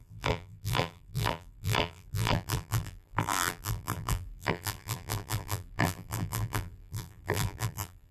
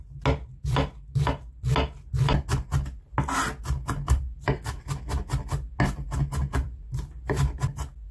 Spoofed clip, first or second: first